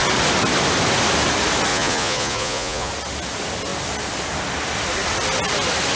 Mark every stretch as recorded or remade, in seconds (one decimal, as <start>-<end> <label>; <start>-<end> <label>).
0.0-1.7 recorded; 1.7-2.9 remade; 2.9-6.0 recorded

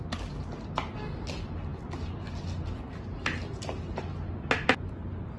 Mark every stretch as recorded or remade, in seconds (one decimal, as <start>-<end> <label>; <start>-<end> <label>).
0.0-5.4 recorded

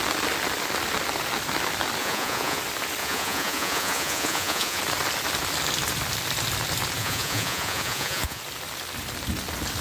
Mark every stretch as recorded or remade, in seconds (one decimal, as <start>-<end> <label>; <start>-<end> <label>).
0.0-2.0 recorded; 2.0-2.6 remade; 2.6-3.0 recorded; 3.0-4.8 remade; 4.8-7.0 recorded; 7.0-8.4 remade; 8.4-9.8 recorded

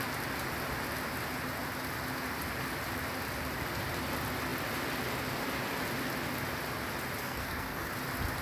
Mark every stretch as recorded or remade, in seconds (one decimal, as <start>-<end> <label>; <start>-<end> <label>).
0.0-7.2 recorded; 7.2-7.9 remade; 7.9-8.4 recorded